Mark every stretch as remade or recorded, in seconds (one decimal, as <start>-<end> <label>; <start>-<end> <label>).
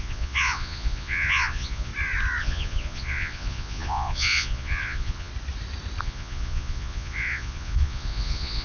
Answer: 0.0-1.9 remade; 1.9-2.4 recorded; 2.4-5.3 remade; 5.3-6.0 recorded; 6.0-8.6 remade